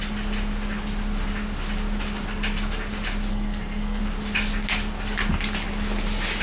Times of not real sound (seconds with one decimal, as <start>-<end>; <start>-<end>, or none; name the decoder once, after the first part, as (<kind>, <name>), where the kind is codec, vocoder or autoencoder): 3.3-4.0 (codec, SNAC)